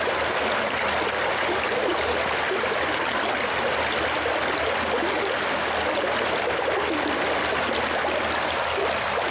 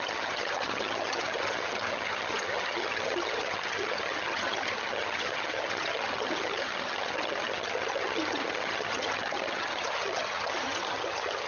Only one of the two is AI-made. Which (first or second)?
second